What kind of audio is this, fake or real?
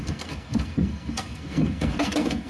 fake